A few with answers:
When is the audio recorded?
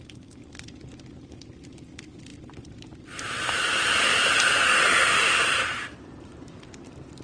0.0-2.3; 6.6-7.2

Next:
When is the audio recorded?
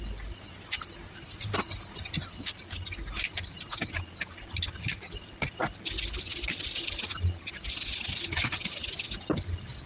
0.0-9.9